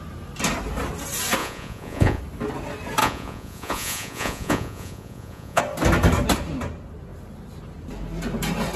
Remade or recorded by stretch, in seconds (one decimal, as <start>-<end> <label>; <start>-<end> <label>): 0.0-1.4 recorded; 1.4-2.2 remade; 2.2-3.0 recorded; 3.0-5.6 remade; 5.6-8.8 recorded